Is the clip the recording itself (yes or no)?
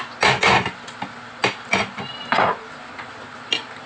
yes